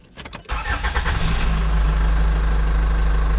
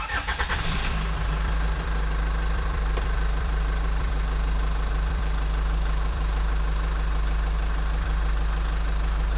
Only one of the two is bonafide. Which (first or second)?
first